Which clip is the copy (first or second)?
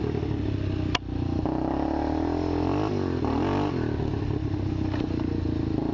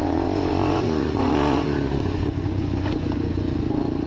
second